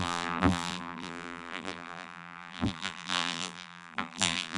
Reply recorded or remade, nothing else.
remade